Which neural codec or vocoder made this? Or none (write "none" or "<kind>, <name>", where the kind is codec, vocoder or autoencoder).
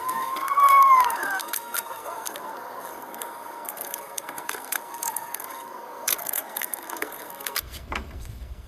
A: codec, SNAC